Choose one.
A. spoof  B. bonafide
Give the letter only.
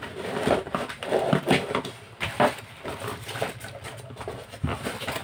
B